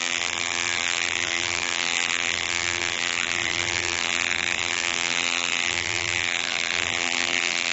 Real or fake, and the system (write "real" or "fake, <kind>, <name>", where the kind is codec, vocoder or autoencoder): fake, vocoder, BigVGAN v2